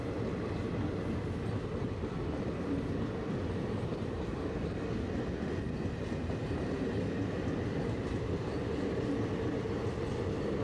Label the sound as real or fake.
real